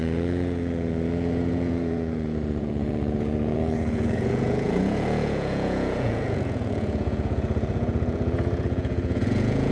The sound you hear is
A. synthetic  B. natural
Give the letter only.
A